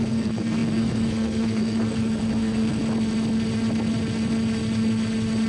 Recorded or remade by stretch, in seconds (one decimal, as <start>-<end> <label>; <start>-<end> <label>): 0.0-2.8 remade; 2.8-5.5 recorded